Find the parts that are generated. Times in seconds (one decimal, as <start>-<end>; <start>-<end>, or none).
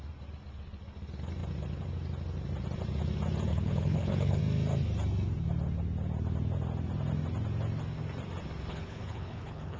3.5-4.4; 8.7-9.8